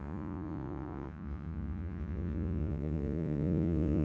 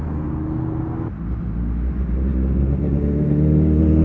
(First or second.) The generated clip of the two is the first